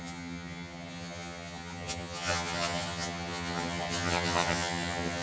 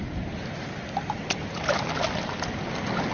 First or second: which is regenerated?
first